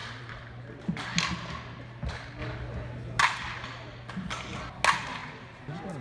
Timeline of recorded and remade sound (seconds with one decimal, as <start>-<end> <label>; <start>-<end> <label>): 0.0-0.6 remade; 0.6-6.0 recorded